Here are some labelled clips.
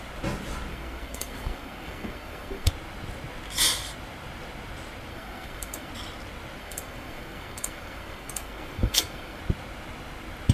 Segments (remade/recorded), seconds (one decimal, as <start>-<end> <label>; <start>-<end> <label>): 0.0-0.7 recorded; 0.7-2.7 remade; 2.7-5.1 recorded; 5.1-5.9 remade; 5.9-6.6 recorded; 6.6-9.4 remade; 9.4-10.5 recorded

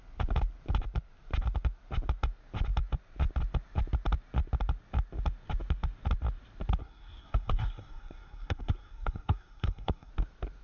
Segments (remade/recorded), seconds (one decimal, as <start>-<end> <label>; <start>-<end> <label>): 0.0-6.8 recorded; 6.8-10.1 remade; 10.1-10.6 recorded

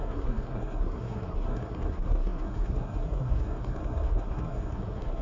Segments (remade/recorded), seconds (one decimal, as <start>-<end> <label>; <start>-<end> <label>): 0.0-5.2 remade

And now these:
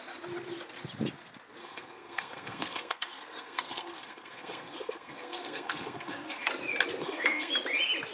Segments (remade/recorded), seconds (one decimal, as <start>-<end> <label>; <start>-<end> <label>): 0.0-1.6 recorded; 1.6-6.5 remade; 6.5-7.0 recorded; 7.0-7.5 remade; 7.5-8.1 recorded